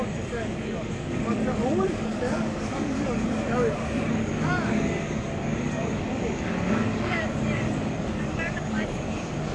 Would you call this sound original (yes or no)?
no